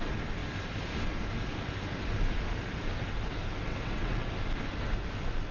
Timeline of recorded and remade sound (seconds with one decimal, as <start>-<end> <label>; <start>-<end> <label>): 0.0-3.7 recorded; 3.7-4.3 remade; 4.3-5.5 recorded

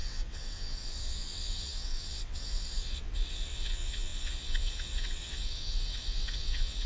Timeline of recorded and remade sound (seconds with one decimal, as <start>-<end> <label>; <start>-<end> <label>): 0.0-6.9 remade

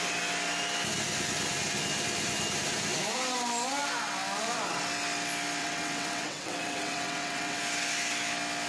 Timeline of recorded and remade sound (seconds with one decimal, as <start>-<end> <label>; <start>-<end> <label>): 0.0-5.6 recorded; 5.6-7.6 remade; 7.6-8.7 recorded

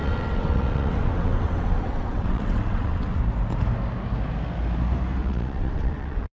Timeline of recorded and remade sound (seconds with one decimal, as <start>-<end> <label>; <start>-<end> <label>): 0.0-3.2 remade; 3.2-5.2 recorded; 5.2-6.3 remade

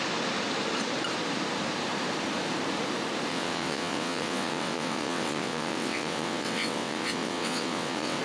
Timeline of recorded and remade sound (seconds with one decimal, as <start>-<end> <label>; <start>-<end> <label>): 0.0-3.3 recorded; 3.3-8.2 remade